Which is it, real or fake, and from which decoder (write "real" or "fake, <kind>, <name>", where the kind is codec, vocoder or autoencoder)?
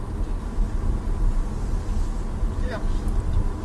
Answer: real